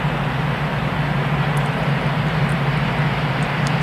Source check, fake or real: real